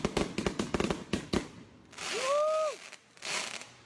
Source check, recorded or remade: recorded